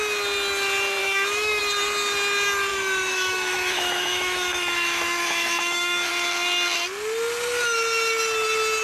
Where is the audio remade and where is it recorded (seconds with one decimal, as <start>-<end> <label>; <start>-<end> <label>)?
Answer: 0.0-1.0 recorded; 1.0-1.6 remade; 1.6-2.7 recorded; 2.7-6.1 remade; 6.1-8.8 recorded